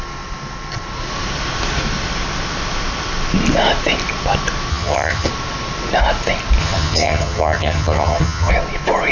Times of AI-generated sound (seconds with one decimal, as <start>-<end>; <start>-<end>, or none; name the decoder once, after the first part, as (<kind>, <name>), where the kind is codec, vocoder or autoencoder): 4.7-5.3 (vocoder, HiFi-GAN); 6.6-8.5